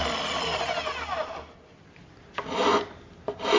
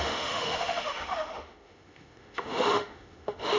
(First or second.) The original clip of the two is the first